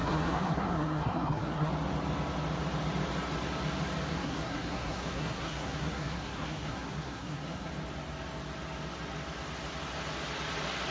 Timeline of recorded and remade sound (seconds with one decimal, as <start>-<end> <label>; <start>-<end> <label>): 0.0-1.7 remade; 1.7-4.1 recorded; 4.1-7.7 remade; 7.7-10.9 recorded